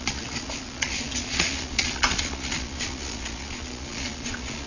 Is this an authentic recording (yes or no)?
no